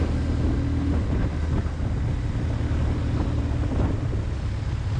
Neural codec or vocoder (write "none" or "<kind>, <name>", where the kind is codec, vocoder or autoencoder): none